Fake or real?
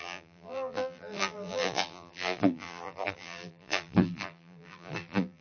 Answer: fake